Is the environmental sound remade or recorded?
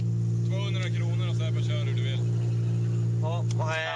recorded